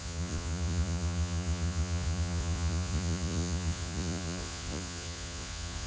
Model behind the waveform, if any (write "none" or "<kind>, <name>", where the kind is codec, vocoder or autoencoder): vocoder, Vocos